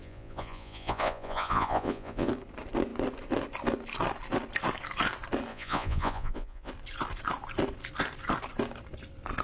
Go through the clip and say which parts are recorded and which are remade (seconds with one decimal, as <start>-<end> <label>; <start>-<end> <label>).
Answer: 0.0-2.3 remade; 2.3-5.5 recorded; 5.5-6.7 remade; 6.7-9.4 recorded